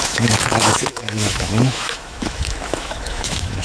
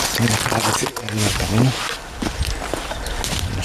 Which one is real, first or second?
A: second